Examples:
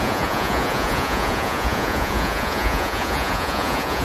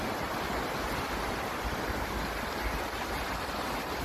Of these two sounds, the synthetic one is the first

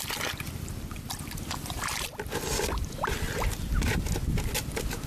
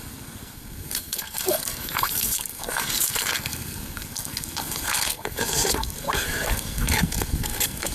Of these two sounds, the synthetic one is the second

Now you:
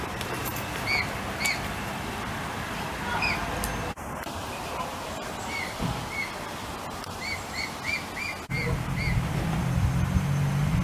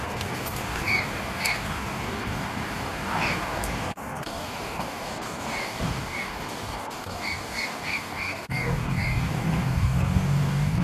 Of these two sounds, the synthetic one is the second